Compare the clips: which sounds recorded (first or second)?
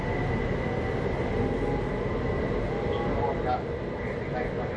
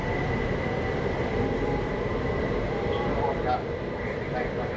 first